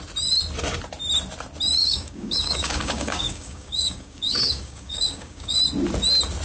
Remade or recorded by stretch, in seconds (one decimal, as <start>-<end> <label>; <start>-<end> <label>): 0.0-1.8 recorded; 1.8-5.6 remade; 5.6-6.4 recorded